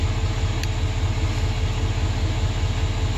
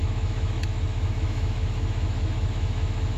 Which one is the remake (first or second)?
second